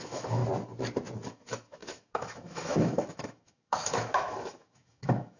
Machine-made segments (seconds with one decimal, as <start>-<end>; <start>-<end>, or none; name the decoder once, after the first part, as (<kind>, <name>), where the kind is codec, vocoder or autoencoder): 0.0-0.4 (autoencoder, DAC-VAE); 1.3-5.4